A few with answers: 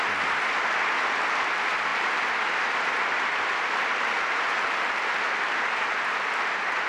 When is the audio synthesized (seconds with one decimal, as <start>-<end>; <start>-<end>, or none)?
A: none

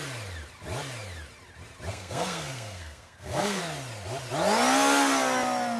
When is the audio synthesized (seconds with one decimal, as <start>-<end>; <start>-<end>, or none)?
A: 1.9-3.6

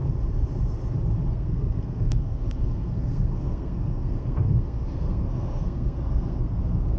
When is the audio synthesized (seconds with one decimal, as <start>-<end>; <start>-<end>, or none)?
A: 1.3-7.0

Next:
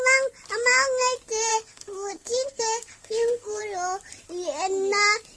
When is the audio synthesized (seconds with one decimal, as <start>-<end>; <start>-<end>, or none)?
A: 1.5-3.6

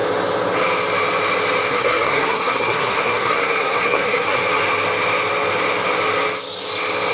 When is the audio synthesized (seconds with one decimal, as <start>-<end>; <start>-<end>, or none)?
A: 1.7-4.4

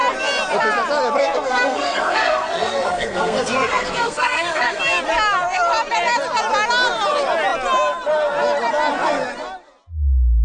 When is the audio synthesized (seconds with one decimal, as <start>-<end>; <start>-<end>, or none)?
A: 1.2-4.8

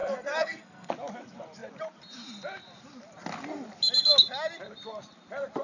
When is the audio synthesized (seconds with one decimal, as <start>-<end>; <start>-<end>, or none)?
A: 0.0-0.9

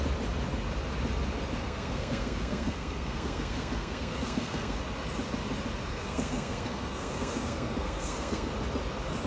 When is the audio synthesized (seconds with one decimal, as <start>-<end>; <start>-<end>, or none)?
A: 1.6-4.8; 5.9-8.5